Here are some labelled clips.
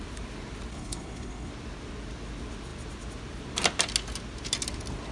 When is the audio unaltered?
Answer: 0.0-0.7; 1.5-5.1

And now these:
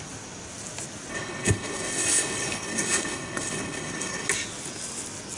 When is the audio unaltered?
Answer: 0.0-1.1; 4.3-5.4